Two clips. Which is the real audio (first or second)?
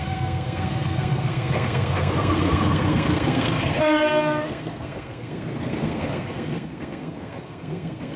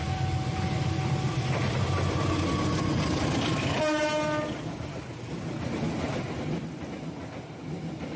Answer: second